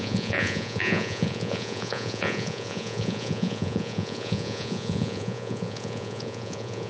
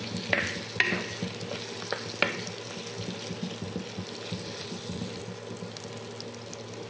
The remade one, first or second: first